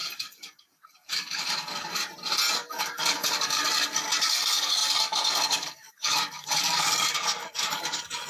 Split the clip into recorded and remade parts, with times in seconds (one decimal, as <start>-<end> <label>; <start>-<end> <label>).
0.0-2.0 remade; 2.0-2.5 recorded; 2.5-8.3 remade